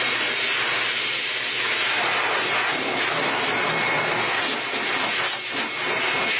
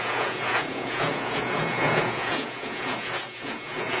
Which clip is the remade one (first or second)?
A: second